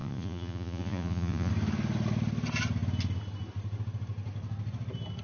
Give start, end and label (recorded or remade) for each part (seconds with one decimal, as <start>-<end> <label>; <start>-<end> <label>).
0.0-1.5 remade; 1.5-5.2 recorded